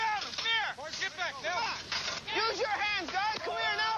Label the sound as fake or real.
real